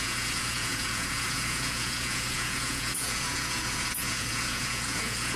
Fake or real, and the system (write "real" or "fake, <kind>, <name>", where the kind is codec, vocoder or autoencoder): fake, vocoder, Vocos